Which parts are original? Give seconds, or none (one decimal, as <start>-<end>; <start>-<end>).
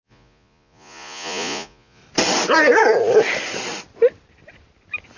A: 2.0-5.2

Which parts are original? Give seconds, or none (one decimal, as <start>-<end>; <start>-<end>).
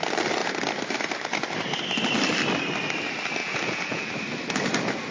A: 0.0-3.4; 4.1-5.1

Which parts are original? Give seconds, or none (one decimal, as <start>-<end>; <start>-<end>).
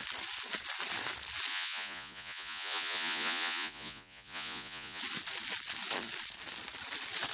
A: 0.0-1.5; 5.0-7.3